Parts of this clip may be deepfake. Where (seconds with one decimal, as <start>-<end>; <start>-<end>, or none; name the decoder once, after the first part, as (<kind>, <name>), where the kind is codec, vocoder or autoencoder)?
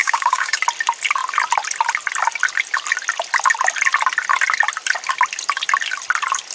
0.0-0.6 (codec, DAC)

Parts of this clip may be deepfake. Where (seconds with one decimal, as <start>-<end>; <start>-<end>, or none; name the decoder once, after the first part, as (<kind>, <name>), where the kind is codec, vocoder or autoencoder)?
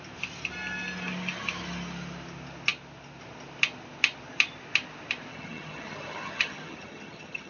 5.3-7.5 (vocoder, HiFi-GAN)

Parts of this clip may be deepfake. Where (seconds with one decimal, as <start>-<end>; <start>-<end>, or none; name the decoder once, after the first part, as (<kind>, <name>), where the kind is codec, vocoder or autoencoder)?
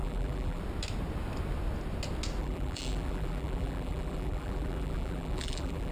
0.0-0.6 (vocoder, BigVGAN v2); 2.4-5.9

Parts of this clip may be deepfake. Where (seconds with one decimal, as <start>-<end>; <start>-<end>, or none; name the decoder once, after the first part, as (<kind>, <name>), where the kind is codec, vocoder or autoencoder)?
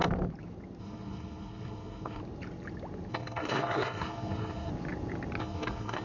0.8-2.2 (codec, SNAC); 3.1-4.7; 5.4-6.0